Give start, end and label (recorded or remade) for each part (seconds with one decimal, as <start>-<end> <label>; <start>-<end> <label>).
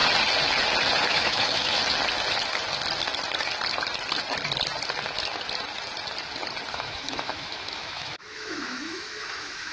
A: 0.0-1.1 recorded; 1.1-1.8 remade; 1.8-6.7 recorded; 6.7-9.7 remade